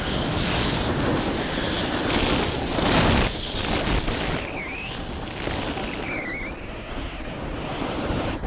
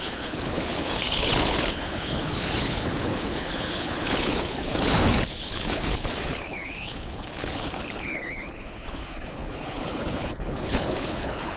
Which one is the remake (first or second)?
second